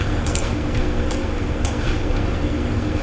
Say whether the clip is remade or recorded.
remade